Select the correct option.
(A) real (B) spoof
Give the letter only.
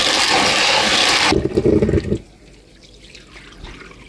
A